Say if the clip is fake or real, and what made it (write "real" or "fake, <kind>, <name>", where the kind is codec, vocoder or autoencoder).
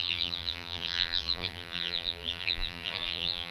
fake, vocoder, BigVGAN v2